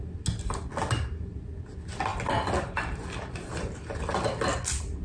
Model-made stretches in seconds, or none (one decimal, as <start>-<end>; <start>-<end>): 2.1-4.0